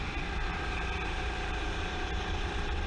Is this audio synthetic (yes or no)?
no